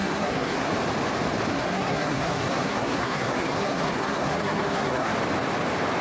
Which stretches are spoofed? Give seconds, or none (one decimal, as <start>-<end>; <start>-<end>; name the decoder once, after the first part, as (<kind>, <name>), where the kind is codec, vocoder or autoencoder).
0.0-0.7 (codec, SNAC); 1.5-5.1